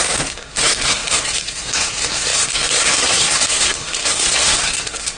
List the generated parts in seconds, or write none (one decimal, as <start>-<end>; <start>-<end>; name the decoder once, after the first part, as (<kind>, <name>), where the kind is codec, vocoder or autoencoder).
0.0-5.2 (codec, SNAC)